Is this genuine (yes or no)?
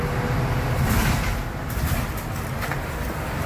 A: yes